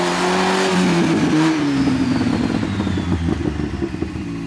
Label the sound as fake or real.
real